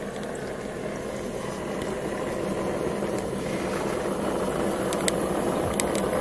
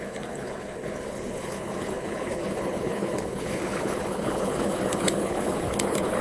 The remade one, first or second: second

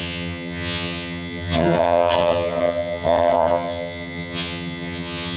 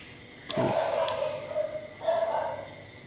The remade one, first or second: first